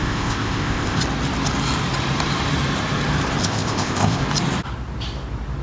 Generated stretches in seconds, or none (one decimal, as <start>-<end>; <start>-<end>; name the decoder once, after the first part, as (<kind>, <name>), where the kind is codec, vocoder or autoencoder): 0.0-1.0 (codec, ZipCodec); 3.4-4.2